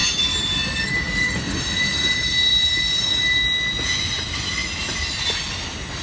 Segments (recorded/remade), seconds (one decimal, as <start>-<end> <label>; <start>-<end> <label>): 0.0-6.0 recorded